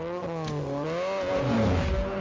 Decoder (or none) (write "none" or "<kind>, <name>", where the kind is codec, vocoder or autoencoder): none